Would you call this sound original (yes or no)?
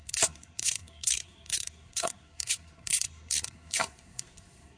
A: no